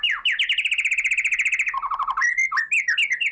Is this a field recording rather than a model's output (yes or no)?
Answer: yes